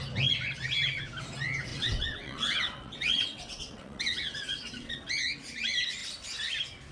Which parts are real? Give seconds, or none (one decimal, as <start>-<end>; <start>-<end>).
0.0-1.7; 5.1-6.9